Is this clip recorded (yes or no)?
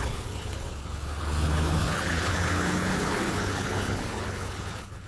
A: no